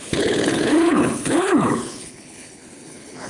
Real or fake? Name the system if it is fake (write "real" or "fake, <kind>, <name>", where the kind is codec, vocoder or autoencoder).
fake, codec, HILCodec